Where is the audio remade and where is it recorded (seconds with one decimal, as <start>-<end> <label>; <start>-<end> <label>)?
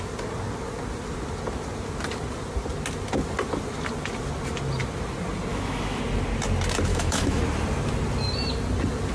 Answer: 0.0-5.5 recorded; 5.5-6.0 remade; 6.0-6.9 recorded; 6.9-7.4 remade; 7.4-9.1 recorded